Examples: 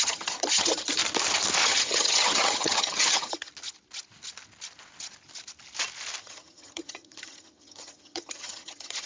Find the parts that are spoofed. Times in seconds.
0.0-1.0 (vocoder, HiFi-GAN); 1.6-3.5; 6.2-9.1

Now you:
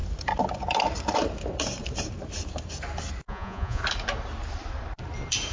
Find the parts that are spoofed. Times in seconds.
3.3-3.8 (vocoder, Vocos)

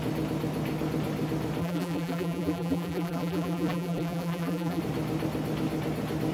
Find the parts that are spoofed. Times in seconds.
1.6-4.8 (vocoder, BigVGAN v2)

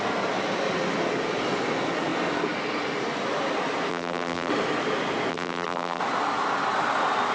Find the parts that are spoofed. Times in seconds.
3.9-4.5 (vocoder, BigVGAN v2); 5.3-6.0

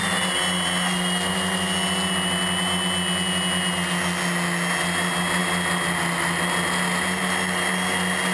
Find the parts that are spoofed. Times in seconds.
none

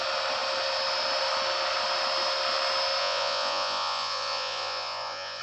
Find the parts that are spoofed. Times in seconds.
3.0-5.4 (vocoder, Vocos)